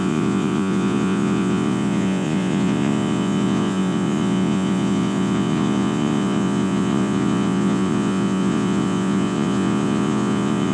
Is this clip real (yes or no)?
no